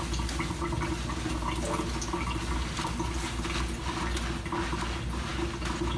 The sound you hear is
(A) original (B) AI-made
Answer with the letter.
A